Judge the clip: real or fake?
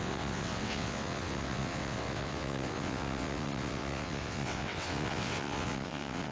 fake